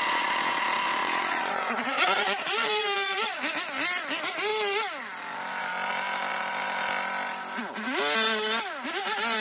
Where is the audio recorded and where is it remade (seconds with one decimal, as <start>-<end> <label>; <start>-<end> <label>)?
0.0-0.6 remade; 0.6-1.0 recorded; 1.0-3.4 remade; 3.4-9.4 recorded